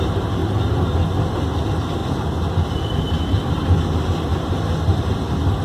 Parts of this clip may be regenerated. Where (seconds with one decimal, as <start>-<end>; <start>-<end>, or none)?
0.0-0.4; 1.3-5.6